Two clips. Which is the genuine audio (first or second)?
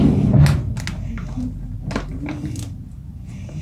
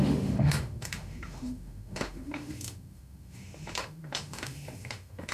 first